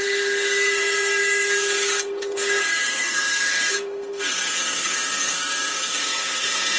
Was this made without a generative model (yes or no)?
no